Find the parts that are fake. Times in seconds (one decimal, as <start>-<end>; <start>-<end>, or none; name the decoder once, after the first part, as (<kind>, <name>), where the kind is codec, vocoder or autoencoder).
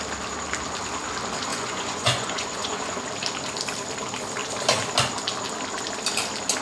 1.5-3.0 (vocoder, Vocos)